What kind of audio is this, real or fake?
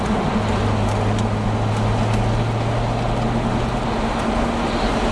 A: real